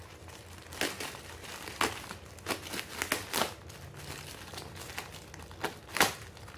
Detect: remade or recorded recorded